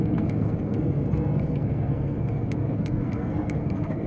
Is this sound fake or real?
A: fake